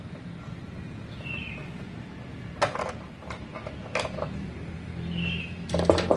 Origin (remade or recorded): recorded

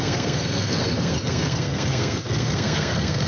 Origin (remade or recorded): remade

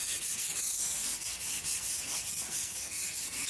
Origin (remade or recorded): remade